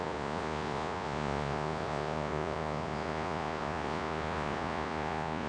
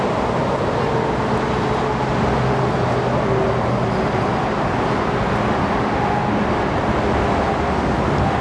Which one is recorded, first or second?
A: second